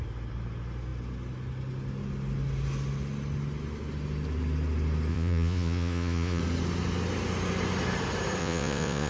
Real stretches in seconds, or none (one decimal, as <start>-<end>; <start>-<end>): 0.0-5.1; 6.4-8.4